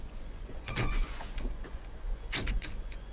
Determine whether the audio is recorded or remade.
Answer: remade